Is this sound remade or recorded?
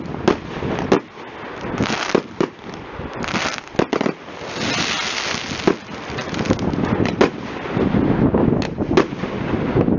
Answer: recorded